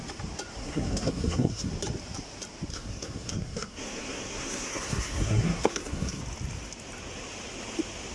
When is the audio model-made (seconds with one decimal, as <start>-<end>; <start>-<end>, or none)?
0.6-1.7; 2.7-6.2